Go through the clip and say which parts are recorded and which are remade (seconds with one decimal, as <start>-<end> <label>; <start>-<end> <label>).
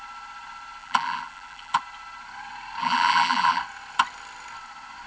0.0-0.8 recorded; 0.8-1.8 remade; 1.8-2.8 recorded; 2.8-3.6 remade; 3.6-5.1 recorded